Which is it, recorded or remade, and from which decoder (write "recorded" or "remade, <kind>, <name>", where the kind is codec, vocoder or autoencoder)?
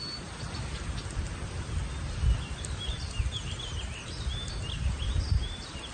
recorded